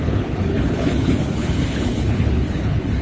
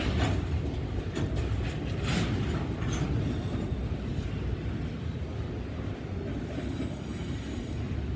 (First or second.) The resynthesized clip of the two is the first